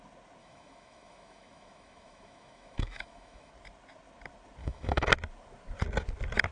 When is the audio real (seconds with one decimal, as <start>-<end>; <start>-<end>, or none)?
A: 0.0-0.4; 3.5-4.6; 5.1-6.5